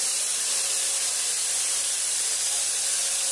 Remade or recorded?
remade